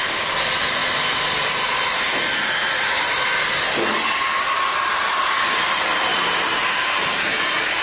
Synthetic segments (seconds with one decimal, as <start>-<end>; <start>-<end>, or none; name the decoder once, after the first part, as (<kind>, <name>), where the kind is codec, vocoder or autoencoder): none